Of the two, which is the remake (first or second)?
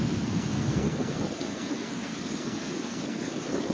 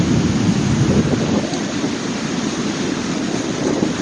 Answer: first